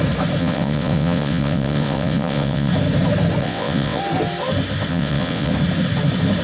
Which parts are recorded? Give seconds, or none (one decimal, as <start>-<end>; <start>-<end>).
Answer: 0.0-0.4; 2.7-3.4; 4.0-4.9; 5.5-6.4